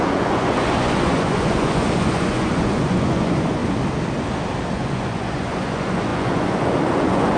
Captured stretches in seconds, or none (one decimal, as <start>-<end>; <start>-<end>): 3.6-4.7